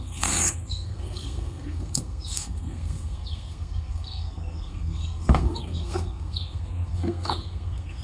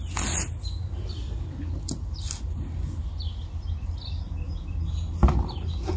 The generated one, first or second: first